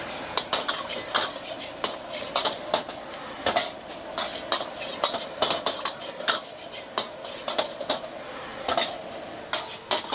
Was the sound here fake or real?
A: real